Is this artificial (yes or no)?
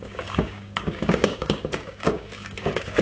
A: yes